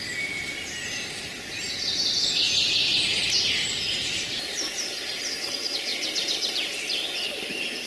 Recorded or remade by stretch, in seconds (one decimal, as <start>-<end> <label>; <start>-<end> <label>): 0.0-2.9 recorded; 2.9-5.5 remade; 5.5-7.9 recorded